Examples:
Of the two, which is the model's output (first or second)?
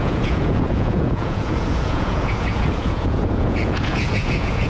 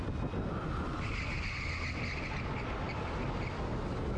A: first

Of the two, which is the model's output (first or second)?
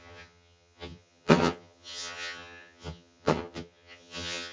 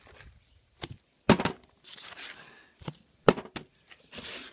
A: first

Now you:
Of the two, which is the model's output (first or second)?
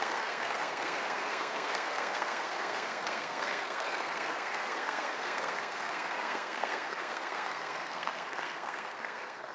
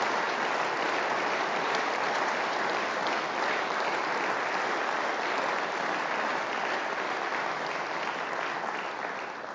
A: first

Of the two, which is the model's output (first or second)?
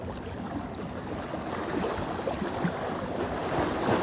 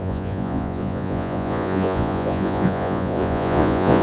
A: second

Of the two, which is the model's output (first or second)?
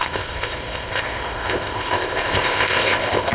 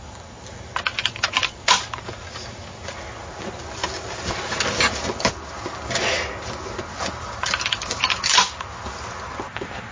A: first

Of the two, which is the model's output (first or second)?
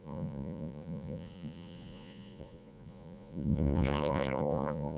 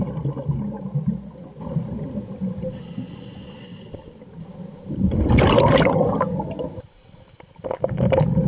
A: first